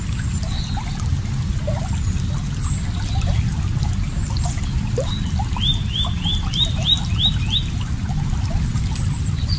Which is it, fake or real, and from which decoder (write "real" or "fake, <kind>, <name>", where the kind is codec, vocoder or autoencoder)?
real